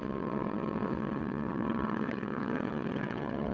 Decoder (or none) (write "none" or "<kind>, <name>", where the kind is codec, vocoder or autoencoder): vocoder, WaveNeXt